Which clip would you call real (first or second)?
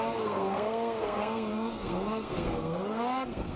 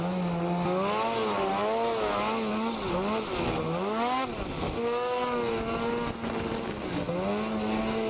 second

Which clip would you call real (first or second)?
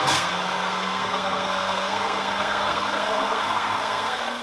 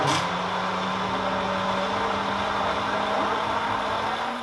second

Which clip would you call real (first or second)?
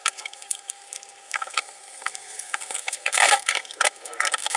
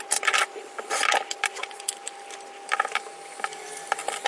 second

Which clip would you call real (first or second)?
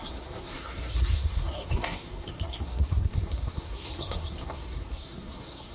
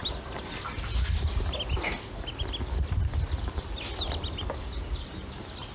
second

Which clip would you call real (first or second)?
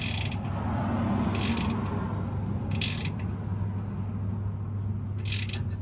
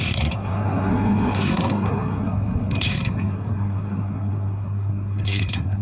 first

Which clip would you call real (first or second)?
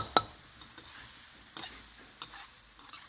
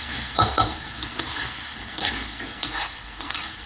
first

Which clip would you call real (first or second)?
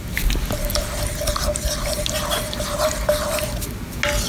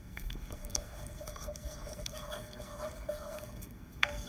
first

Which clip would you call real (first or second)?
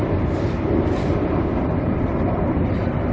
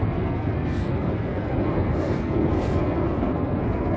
first